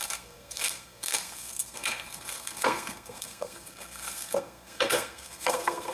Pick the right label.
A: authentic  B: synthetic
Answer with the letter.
B